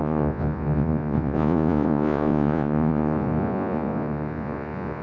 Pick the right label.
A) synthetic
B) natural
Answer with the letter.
A